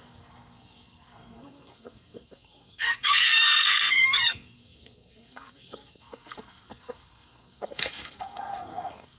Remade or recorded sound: remade